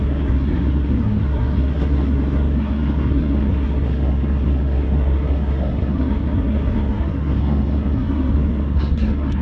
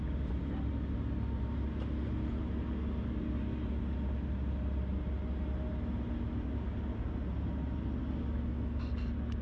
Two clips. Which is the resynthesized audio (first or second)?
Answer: first